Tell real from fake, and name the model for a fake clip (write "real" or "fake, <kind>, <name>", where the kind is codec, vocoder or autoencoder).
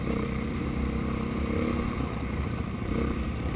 fake, vocoder, BigVGAN v2